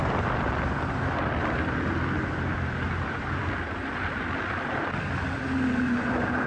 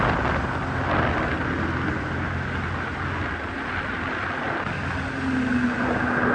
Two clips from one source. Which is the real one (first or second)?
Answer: second